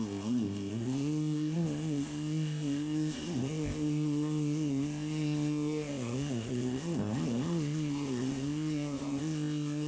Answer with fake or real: fake